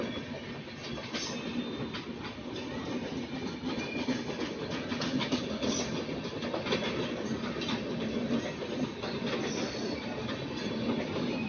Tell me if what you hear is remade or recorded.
recorded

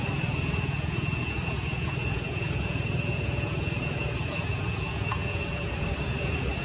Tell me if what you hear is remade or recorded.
remade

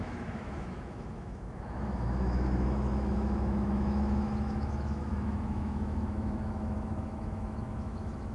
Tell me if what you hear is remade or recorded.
remade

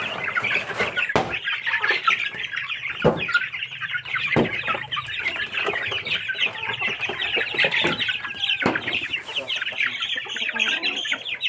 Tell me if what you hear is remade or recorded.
remade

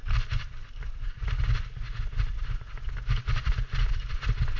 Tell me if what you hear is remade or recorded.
recorded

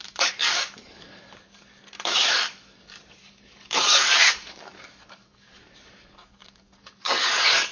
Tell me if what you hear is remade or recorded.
remade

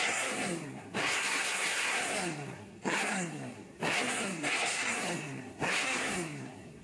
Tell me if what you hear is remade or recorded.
remade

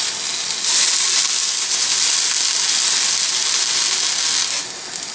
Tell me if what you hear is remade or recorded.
recorded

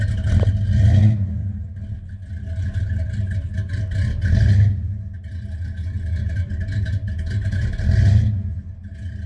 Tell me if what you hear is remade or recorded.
recorded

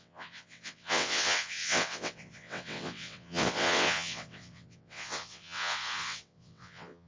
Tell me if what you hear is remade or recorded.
remade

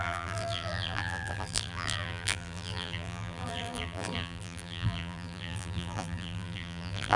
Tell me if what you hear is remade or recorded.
remade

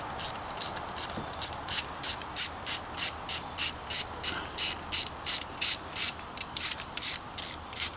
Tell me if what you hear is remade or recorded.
remade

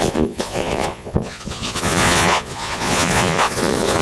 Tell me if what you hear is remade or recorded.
remade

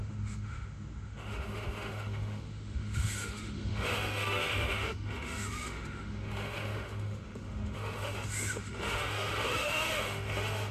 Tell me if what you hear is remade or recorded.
remade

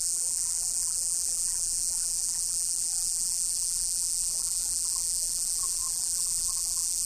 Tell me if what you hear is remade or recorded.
remade